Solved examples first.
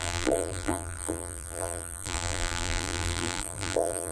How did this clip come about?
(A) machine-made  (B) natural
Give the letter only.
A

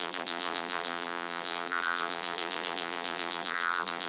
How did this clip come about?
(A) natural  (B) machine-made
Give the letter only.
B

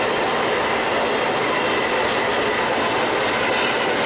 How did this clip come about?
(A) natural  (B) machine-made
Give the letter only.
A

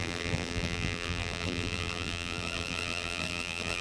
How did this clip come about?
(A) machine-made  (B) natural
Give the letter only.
A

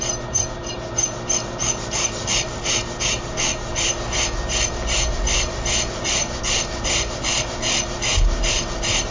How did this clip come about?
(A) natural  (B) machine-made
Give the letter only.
B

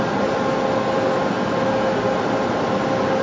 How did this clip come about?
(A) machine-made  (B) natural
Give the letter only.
B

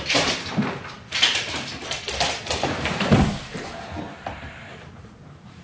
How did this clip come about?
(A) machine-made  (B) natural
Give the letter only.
A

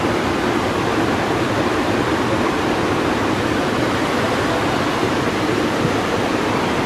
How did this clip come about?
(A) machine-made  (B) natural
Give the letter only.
A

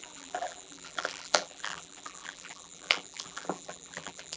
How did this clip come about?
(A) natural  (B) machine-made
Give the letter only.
B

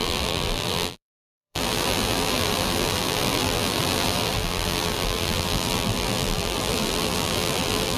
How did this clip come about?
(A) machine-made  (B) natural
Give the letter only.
A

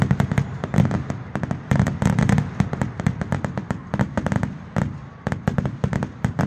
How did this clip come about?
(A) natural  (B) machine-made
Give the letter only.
A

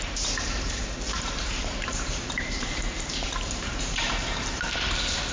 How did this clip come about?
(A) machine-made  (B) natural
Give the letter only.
A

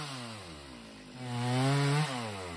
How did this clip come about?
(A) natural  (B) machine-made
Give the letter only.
A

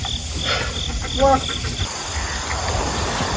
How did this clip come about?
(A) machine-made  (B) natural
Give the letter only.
B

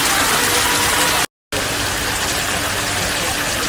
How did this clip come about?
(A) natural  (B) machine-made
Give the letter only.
A